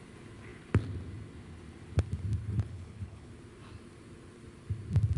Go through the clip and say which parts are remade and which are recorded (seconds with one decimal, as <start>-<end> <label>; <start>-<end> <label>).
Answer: 0.0-2.4 recorded; 2.4-3.3 remade; 3.3-5.2 recorded